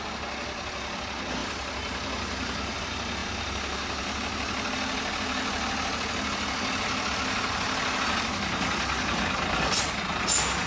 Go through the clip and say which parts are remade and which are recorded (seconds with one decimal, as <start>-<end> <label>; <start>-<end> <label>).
0.0-1.4 recorded; 1.4-2.8 remade; 2.8-10.7 recorded